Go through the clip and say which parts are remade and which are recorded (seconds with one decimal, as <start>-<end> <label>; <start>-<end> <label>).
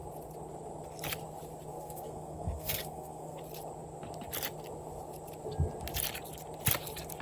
0.0-1.7 recorded; 1.7-3.4 remade; 3.4-7.2 recorded